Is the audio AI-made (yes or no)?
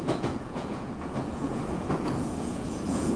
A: yes